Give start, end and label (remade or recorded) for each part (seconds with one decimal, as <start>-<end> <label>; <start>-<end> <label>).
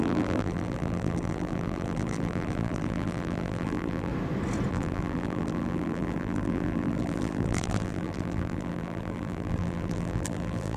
0.0-4.1 remade; 4.1-4.7 recorded; 4.7-10.8 remade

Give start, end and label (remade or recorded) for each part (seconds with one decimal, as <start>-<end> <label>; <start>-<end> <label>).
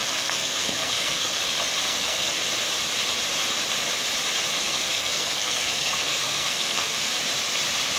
0.0-1.4 remade; 1.4-1.8 recorded; 1.8-2.4 remade; 2.4-4.6 recorded; 4.6-7.2 remade; 7.2-8.0 recorded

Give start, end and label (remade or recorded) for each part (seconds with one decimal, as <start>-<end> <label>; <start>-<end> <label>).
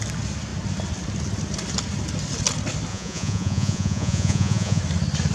0.0-2.9 recorded; 2.9-4.8 remade; 4.8-5.3 recorded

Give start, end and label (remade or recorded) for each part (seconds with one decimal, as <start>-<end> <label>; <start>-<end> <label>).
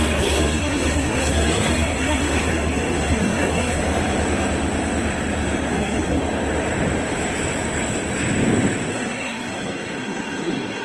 0.0-3.8 remade; 3.8-5.7 recorded; 5.7-6.2 remade; 6.2-8.9 recorded; 8.9-10.8 remade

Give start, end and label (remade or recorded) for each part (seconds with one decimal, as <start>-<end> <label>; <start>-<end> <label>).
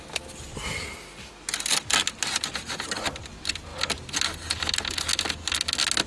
0.0-6.1 recorded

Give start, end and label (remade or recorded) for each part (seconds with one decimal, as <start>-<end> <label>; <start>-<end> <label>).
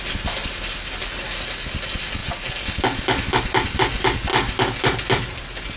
0.0-5.8 recorded